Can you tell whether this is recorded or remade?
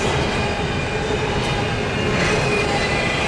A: recorded